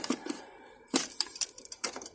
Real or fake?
fake